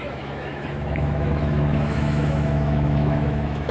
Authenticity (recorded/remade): remade